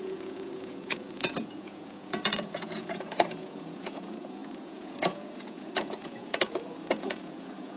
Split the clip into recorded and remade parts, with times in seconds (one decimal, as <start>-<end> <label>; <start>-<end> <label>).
0.0-7.8 remade